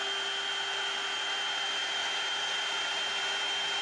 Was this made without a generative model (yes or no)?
yes